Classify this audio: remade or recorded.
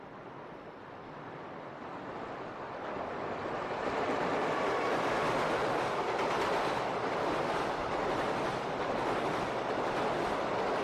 recorded